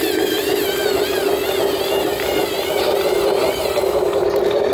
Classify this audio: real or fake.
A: real